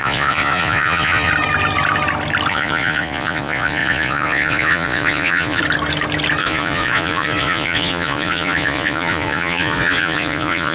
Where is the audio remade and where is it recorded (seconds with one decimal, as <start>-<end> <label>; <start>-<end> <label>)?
0.0-1.3 remade; 1.3-2.5 recorded; 2.5-5.6 remade; 5.6-6.4 recorded; 6.4-10.7 remade